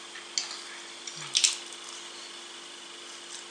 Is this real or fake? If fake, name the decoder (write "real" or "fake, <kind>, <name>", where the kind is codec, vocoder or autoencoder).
real